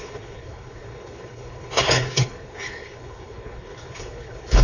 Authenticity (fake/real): fake